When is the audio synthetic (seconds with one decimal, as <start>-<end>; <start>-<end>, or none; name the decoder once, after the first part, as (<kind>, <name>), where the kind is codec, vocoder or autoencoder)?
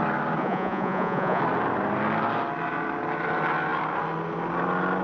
0.4-1.4 (vocoder, Vocos)